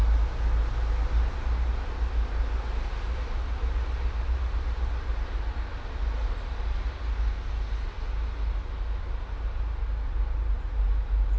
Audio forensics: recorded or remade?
recorded